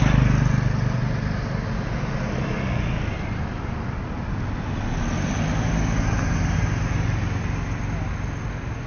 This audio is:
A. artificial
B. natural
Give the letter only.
B